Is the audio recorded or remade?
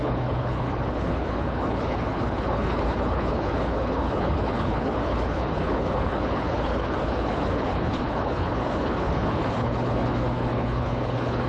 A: remade